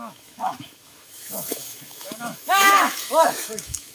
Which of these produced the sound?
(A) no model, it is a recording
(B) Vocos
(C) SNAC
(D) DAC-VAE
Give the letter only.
D